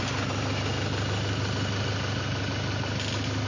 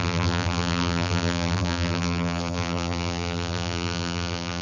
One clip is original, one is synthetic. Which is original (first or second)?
first